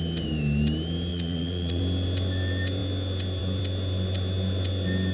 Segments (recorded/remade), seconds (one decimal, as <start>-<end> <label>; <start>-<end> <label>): 0.0-1.1 recorded; 1.1-1.8 remade; 1.8-5.1 recorded